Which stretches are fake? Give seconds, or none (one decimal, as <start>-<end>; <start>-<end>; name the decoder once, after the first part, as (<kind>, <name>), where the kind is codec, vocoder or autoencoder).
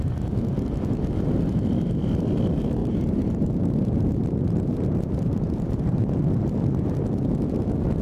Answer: 2.8-6.3 (vocoder, BigVGAN v2)